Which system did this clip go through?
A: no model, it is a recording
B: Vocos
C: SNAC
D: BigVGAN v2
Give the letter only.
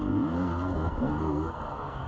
C